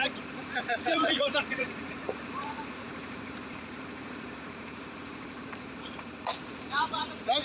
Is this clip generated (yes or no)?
yes